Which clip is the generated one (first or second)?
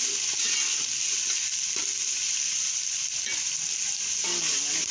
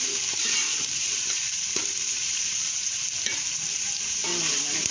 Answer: second